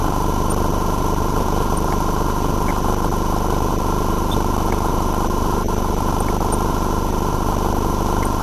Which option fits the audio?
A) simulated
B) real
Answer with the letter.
B